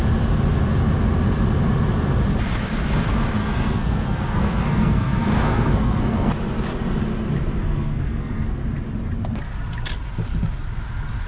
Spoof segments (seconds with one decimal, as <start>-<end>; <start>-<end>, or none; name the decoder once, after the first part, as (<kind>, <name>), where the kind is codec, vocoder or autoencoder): 3.4-6.3 (codec, SNAC); 7.6-8.6